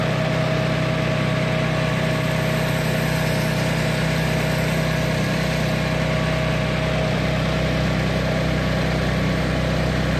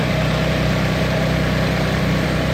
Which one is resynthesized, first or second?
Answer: second